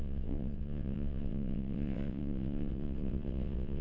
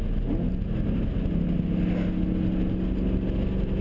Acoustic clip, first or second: second